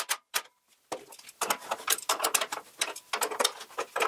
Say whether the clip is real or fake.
real